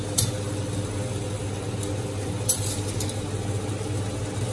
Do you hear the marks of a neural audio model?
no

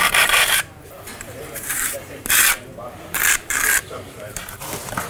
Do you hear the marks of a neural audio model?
yes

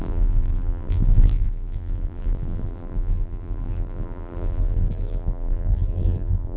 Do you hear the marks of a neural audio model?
yes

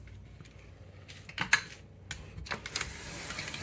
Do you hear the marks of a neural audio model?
no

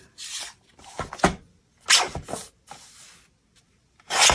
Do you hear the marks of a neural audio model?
no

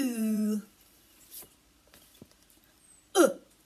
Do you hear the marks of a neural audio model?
yes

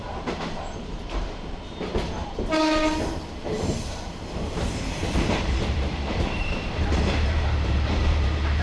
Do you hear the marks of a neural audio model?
yes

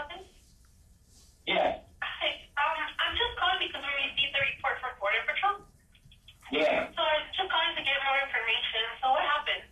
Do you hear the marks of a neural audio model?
yes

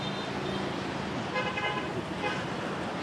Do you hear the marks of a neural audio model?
no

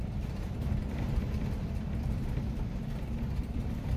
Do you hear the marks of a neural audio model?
yes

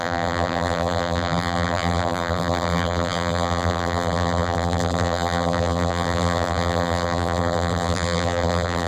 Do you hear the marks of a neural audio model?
yes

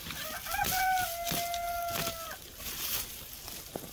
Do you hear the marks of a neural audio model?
no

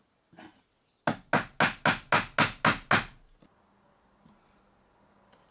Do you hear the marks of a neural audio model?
no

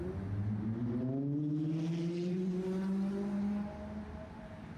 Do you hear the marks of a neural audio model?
no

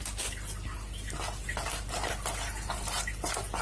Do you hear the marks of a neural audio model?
no